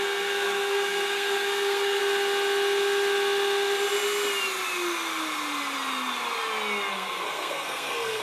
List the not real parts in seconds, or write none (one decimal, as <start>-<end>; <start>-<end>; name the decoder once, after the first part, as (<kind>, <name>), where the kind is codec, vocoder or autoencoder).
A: 0.0-2.0 (codec, SNAC); 6.9-8.2